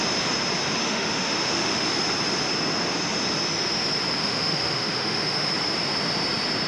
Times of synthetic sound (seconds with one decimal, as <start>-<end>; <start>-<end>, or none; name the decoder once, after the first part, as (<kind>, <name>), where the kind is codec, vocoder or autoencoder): 0.8-1.8 (autoencoder, DAC-VAE); 4.2-5.5